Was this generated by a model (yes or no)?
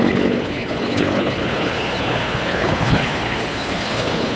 yes